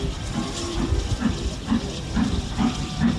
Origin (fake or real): fake